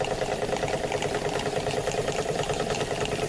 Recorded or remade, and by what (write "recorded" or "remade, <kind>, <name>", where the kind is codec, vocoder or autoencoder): recorded